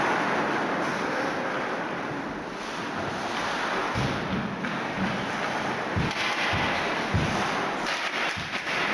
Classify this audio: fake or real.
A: real